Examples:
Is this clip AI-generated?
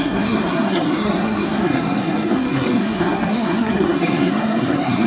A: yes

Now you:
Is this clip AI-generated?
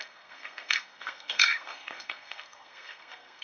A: yes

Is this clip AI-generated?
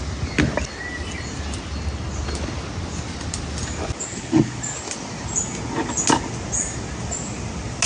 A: no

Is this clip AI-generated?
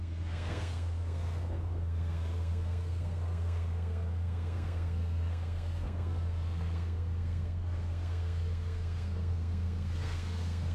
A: yes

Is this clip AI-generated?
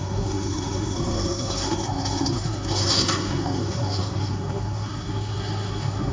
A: yes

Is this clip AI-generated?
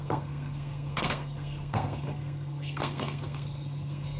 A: yes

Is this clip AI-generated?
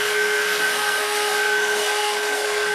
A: yes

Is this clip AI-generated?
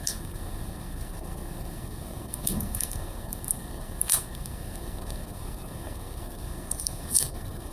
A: yes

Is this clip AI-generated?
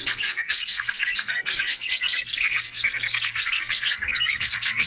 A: yes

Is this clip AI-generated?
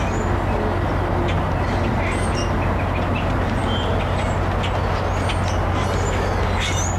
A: no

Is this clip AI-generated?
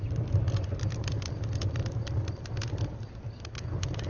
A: no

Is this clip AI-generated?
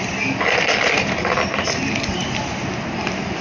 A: no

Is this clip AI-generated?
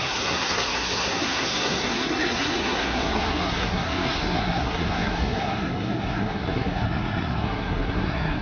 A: yes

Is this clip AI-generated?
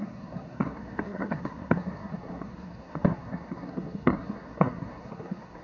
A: yes